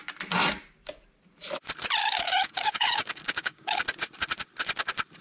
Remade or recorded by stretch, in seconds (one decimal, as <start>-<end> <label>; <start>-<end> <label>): 0.0-2.0 recorded; 2.0-3.8 remade; 3.8-5.2 recorded